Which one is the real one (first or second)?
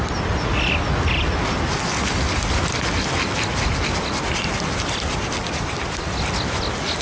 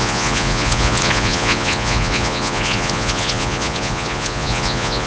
first